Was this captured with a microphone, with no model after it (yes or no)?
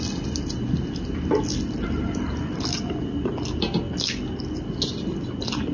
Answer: yes